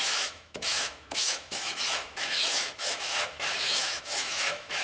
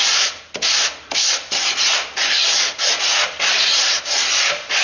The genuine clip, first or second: second